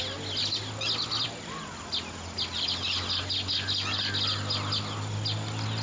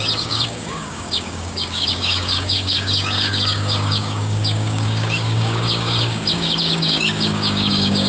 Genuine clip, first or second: first